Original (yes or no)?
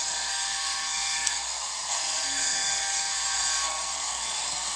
no